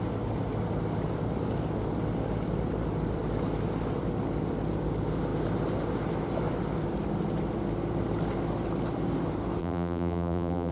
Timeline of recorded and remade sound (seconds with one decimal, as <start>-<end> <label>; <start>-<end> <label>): 0.0-9.6 recorded; 9.6-10.7 remade